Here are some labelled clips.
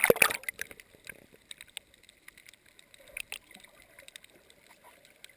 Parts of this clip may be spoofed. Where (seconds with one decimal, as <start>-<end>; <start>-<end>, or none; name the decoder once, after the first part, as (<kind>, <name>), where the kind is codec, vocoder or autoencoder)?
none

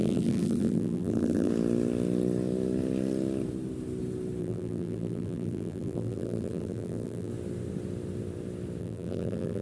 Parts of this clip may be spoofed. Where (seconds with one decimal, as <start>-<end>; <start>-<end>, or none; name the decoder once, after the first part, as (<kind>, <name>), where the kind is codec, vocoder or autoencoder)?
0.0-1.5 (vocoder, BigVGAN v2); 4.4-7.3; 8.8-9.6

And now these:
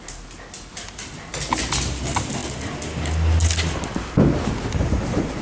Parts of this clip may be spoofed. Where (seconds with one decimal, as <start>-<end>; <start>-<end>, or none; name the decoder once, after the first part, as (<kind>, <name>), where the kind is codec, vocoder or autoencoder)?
none